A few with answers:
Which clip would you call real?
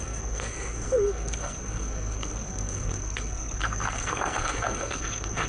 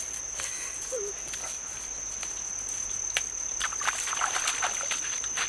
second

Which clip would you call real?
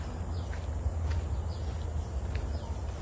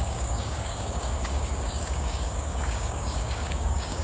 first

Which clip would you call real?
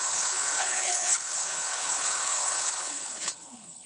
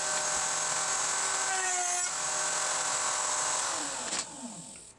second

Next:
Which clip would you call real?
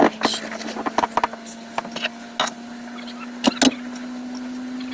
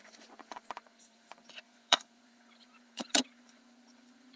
first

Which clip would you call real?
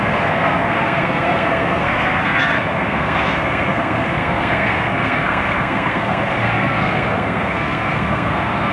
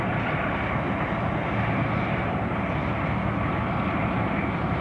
second